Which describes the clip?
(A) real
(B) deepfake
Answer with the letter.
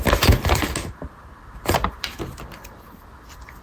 A